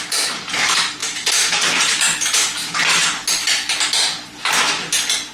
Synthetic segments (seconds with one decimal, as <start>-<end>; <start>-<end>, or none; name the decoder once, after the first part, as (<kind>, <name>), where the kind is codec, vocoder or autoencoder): 1.0-1.9 (vocoder, BigVGAN v2)